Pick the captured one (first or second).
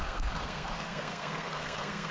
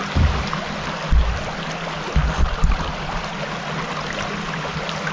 second